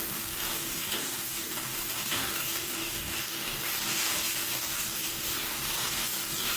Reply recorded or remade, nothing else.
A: remade